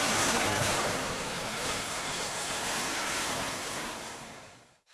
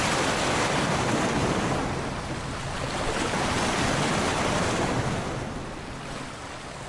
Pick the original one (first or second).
second